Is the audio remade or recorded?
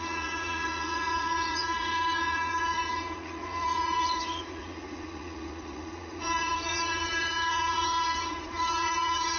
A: remade